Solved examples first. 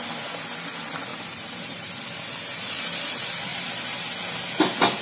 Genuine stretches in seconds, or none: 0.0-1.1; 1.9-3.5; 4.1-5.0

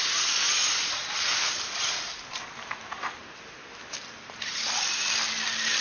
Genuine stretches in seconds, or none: 5.0-5.8

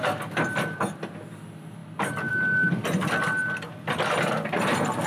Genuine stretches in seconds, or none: 0.0-5.1

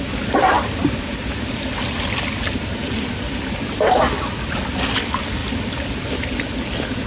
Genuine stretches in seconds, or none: none